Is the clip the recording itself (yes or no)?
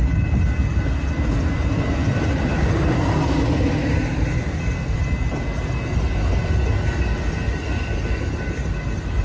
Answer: yes